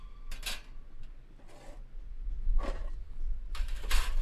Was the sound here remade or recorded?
recorded